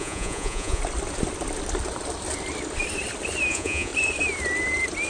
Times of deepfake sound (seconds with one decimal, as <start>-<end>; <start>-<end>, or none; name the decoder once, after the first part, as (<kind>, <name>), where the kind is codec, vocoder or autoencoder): 0.0-0.8 (vocoder, Vocos); 3.5-3.9